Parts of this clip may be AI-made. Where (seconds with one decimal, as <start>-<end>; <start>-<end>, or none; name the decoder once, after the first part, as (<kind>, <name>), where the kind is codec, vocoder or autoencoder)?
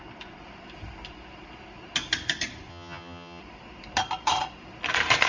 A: 2.7-3.4 (vocoder, HiFi-GAN)